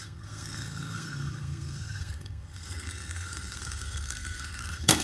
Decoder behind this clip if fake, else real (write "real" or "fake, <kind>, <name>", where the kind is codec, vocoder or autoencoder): fake, codec, SNAC